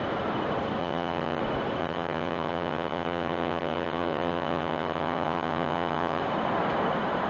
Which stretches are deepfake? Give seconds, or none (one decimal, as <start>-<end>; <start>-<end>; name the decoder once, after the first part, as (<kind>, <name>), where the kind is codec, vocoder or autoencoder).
0.8-1.4 (vocoder, HiFi-GAN); 1.8-6.2